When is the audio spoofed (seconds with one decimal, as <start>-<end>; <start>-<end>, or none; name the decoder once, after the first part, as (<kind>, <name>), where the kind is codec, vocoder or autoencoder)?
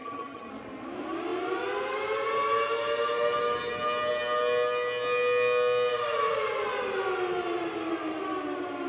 0.0-0.5 (vocoder, HiFi-GAN)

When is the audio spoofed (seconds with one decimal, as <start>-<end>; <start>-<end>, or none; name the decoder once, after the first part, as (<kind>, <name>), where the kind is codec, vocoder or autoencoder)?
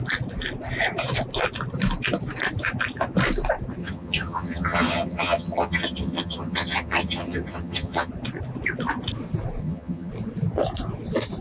3.8-8.1 (vocoder, HiFi-GAN); 9.6-10.1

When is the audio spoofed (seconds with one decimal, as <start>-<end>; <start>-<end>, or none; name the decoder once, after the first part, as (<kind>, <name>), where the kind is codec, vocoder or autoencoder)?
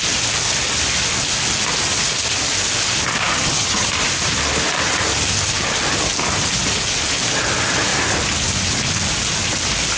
3.3-3.9 (vocoder, HiFi-GAN)